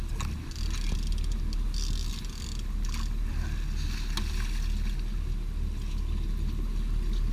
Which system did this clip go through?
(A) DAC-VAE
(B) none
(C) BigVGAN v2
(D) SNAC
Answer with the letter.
B